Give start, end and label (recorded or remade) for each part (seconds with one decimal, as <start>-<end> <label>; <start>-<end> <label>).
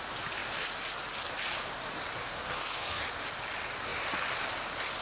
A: 0.0-2.2 recorded; 2.2-3.0 remade; 3.0-5.0 recorded